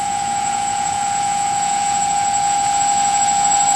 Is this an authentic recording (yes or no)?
no